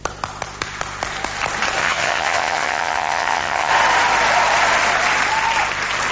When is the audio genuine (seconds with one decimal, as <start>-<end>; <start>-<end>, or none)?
0.0-1.8; 3.7-6.1